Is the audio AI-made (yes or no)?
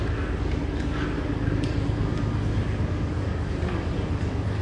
yes